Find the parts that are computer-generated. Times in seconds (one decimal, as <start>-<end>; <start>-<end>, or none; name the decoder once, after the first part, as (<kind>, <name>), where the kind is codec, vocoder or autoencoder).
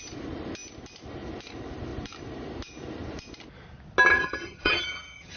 4.1-5.4 (vocoder, HiFi-GAN)